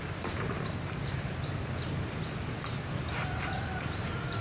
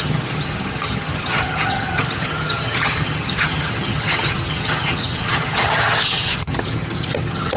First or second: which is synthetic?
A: second